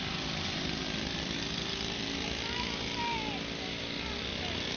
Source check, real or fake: real